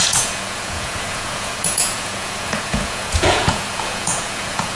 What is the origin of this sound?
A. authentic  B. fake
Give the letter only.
B